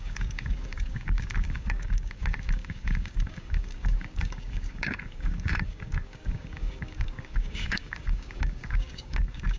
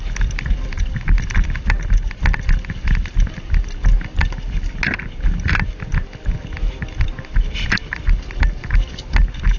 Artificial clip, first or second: first